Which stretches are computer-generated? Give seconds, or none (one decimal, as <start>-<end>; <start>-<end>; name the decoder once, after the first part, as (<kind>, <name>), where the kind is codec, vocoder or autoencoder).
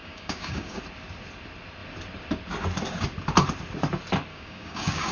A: 0.0-0.8 (codec, DAC); 4.3-5.1